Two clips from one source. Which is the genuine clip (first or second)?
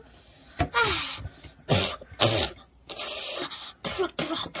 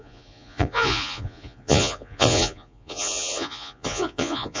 first